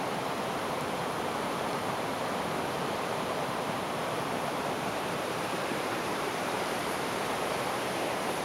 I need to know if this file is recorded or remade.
remade